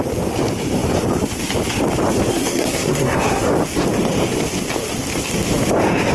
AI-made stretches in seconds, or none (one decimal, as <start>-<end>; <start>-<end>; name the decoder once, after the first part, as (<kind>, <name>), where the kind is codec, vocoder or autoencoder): 2.3-3.5 (codec, SNAC)